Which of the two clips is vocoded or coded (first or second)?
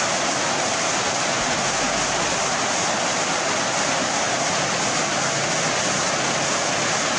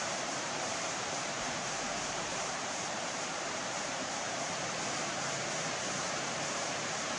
second